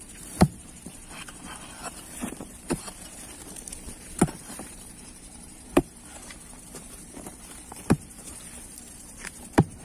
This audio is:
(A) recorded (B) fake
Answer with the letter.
B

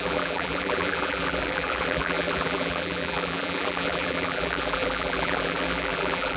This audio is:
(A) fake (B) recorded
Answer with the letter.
A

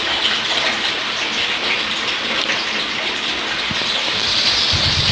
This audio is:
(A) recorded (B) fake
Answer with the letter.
A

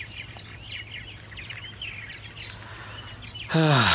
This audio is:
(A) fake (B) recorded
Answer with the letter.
B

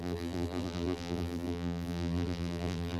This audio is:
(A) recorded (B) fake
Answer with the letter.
B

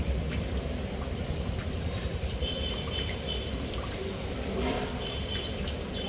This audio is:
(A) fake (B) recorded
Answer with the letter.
A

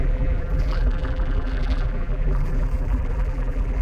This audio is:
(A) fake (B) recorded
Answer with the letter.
A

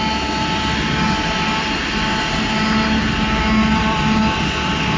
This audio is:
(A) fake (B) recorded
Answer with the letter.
B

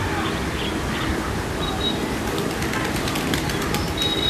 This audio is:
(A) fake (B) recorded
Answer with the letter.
B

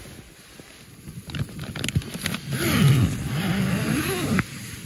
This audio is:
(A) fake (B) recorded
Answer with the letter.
B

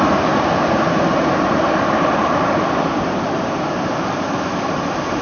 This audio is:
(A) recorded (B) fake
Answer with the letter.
B